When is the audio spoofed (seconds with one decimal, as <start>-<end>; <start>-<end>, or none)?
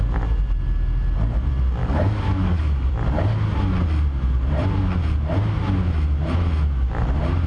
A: 1.8-2.9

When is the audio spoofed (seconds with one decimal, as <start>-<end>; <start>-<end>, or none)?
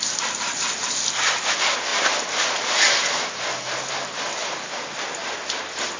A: none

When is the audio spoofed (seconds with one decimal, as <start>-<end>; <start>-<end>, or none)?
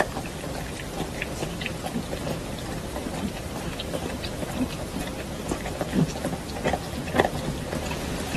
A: 3.0-5.9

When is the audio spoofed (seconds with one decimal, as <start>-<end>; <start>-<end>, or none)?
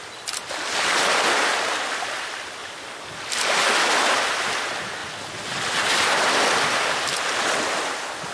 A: 2.6-3.3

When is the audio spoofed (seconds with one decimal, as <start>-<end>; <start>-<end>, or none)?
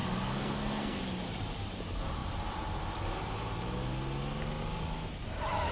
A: 0.0-1.0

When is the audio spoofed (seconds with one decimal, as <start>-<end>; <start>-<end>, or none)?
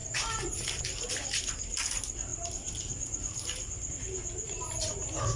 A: none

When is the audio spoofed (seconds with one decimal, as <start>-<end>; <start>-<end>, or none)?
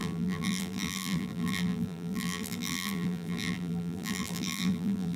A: 0.0-5.2